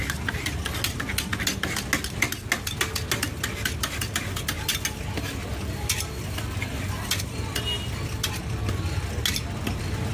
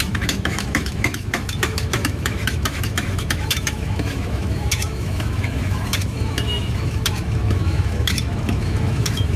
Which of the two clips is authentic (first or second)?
first